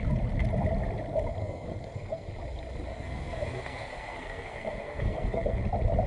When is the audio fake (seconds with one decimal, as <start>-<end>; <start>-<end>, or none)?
1.4-2.3; 2.9-5.6